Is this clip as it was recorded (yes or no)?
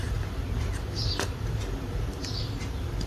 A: no